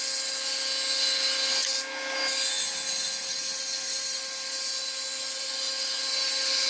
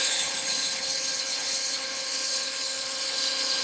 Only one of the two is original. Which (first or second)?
first